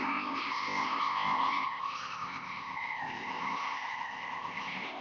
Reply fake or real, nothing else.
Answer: fake